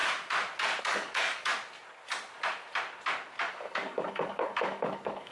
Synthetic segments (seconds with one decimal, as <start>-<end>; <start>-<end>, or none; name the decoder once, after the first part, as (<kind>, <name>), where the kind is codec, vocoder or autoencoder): 0.8-1.5 (codec, DAC); 3.5-5.3